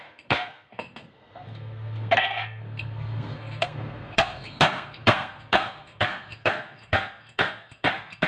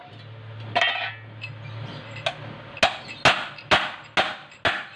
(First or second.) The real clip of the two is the second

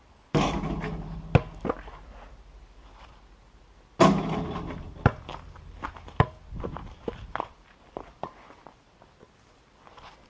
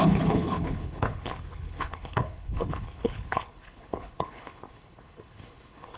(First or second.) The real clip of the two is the first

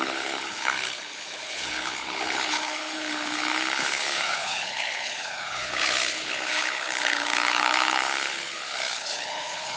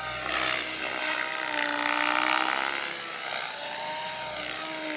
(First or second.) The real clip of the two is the second